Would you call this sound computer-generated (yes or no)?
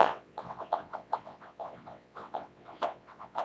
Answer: yes